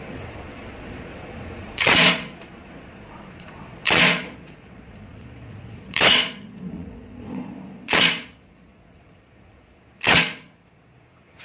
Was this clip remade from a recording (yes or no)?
yes